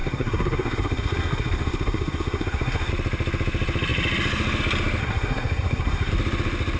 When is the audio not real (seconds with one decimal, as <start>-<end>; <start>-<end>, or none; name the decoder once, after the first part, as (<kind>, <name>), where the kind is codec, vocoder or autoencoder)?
0.0-2.9 (codec, SNAC); 5.0-6.1